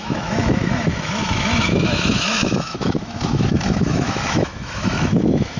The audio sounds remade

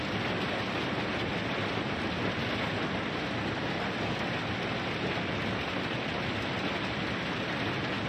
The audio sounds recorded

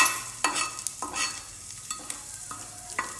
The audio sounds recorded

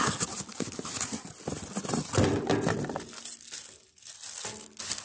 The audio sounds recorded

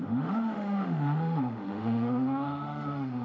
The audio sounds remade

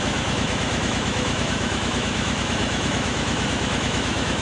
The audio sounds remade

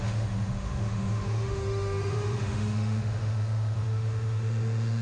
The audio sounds remade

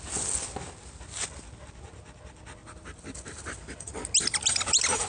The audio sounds recorded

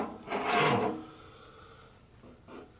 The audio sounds recorded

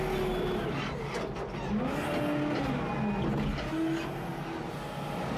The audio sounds recorded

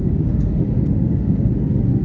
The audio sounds remade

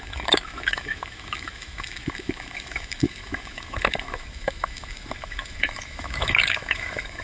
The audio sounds remade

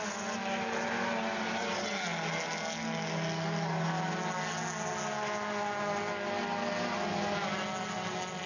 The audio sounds recorded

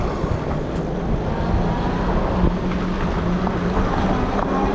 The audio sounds recorded